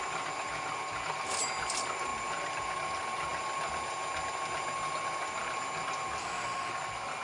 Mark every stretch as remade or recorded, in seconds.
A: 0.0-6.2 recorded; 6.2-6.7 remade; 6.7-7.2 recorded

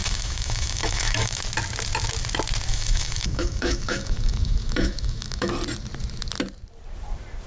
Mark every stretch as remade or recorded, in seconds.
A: 0.0-1.4 remade; 1.4-2.7 recorded; 2.7-5.5 remade; 5.5-7.5 recorded

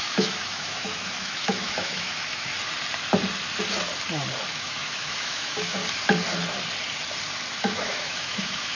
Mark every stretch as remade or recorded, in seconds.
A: 0.0-2.5 remade; 2.5-4.5 recorded; 4.5-5.8 remade; 5.8-7.6 recorded; 7.6-8.8 remade